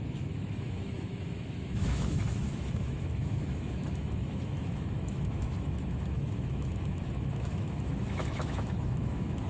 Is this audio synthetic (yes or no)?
yes